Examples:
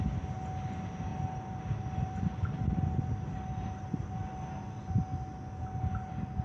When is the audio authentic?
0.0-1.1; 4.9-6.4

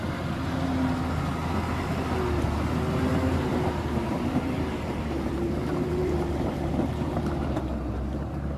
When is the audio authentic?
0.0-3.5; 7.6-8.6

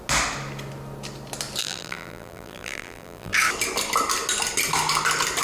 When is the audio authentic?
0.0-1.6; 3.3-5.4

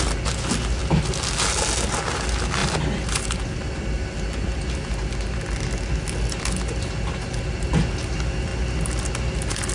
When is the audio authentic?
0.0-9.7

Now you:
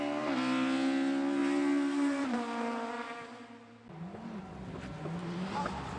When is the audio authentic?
0.0-6.0

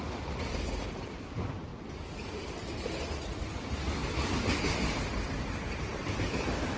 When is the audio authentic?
1.7-5.8

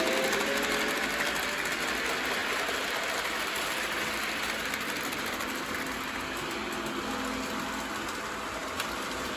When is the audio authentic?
0.0-2.4; 5.9-8.6